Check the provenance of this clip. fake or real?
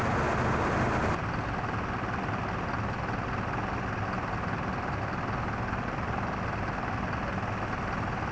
real